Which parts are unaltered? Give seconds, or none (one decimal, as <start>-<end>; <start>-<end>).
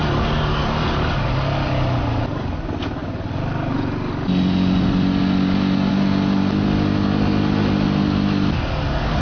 0.0-9.2